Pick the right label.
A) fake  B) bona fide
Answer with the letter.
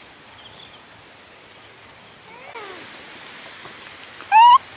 B